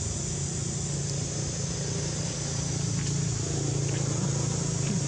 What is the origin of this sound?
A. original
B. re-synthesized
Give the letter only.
A